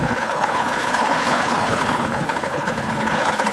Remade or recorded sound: remade